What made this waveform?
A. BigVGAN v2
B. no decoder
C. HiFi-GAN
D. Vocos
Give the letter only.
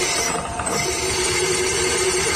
A